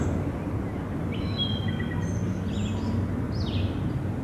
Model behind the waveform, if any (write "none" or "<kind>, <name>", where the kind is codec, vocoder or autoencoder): none